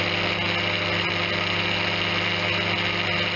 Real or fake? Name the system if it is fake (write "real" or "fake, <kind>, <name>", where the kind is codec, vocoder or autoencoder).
real